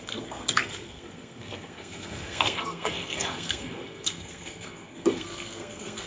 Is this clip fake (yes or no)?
yes